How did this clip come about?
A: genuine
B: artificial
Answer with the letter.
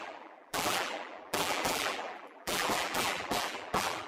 B